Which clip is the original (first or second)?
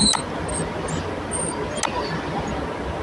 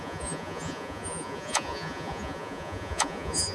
first